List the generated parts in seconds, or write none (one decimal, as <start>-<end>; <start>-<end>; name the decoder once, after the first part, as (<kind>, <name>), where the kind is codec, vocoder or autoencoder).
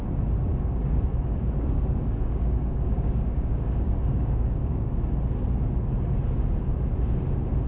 0.5-5.1 (codec, DAC)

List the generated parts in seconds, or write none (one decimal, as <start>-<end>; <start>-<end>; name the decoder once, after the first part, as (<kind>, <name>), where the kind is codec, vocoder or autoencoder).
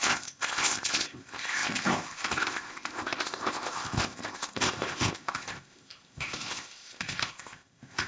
0.0-8.1 (codec, ZipCodec)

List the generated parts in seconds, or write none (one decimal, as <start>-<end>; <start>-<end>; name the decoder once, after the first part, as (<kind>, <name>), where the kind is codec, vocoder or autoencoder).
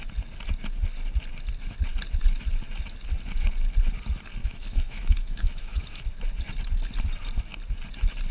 4.4-6.0 (autoencoder, DAC-VAE)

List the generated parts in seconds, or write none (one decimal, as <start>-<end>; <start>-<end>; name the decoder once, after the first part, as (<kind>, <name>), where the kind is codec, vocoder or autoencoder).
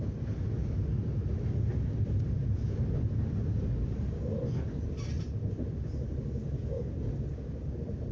none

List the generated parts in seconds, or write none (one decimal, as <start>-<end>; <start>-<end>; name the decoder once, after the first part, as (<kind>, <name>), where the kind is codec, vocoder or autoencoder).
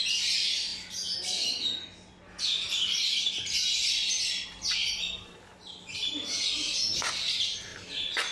4.8-5.9 (vocoder, BigVGAN v2)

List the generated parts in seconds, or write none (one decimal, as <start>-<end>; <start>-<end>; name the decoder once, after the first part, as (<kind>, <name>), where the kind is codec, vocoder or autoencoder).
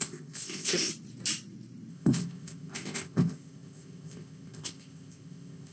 0.0-0.9 (codec, ZipCodec); 1.9-5.7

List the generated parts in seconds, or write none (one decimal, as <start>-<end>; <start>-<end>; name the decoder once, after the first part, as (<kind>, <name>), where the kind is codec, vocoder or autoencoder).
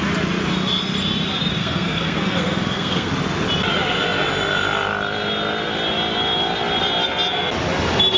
1.6-3.1 (codec, SNAC)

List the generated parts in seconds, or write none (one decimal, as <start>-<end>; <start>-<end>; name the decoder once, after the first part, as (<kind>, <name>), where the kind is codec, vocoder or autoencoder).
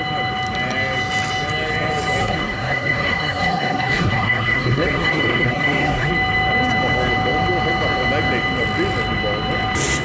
2.2-6.1 (codec, SNAC)